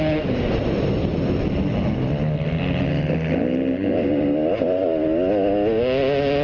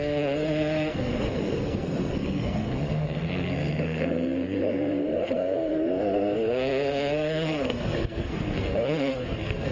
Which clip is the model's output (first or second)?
second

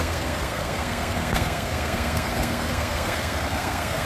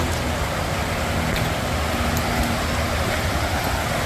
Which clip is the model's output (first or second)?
first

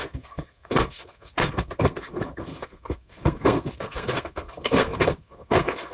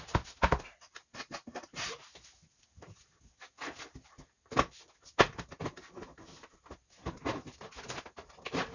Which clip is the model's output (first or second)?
first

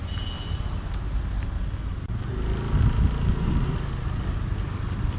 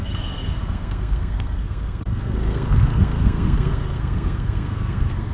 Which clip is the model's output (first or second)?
second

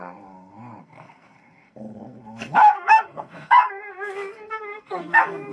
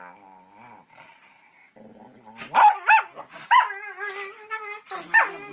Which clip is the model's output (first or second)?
first